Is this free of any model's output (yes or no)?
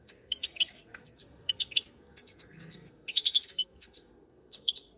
no